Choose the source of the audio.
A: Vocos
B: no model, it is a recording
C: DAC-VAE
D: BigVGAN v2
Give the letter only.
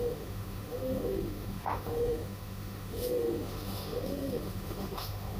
C